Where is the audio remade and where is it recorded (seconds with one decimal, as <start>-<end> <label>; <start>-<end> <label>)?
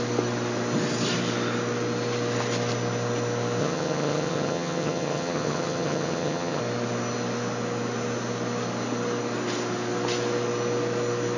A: 0.0-3.6 recorded; 3.6-6.6 remade; 6.6-11.4 recorded